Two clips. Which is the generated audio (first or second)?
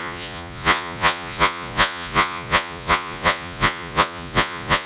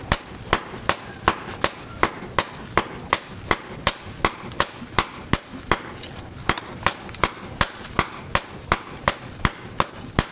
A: first